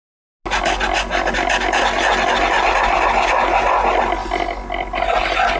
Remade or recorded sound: recorded